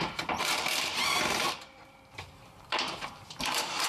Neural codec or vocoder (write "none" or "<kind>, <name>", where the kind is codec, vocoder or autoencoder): vocoder, BigVGAN v2